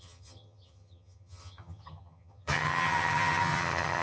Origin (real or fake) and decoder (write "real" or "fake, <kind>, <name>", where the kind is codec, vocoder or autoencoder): fake, vocoder, HiFi-GAN